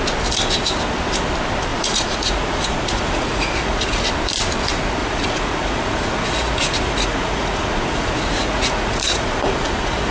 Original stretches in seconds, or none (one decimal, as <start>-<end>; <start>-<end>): 0.0-1.7; 4.0-5.0